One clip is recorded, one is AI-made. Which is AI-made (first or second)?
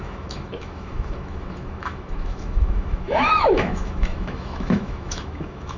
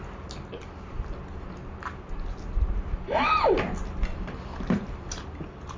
first